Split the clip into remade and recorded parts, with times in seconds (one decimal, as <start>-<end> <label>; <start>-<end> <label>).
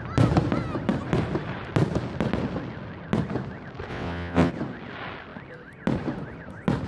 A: 0.0-3.9 recorded; 3.9-4.5 remade; 4.5-6.9 recorded